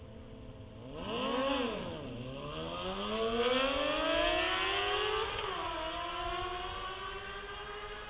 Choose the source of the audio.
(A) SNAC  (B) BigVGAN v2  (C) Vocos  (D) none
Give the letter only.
D